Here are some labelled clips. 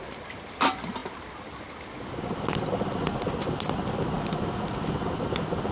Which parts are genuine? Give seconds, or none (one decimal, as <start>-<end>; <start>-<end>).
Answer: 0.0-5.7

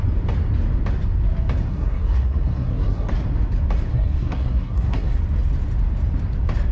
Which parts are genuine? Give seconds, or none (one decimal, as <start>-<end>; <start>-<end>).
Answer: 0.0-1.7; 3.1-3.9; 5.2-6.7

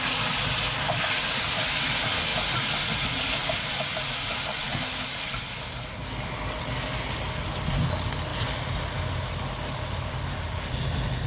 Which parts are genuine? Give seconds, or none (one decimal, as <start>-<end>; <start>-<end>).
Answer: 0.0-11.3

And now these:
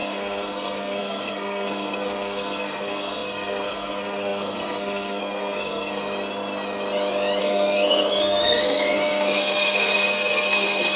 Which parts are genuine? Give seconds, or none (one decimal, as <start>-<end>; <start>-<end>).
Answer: 6.0-7.4

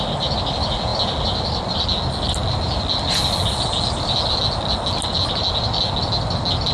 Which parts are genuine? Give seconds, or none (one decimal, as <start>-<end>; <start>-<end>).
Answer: 0.0-6.7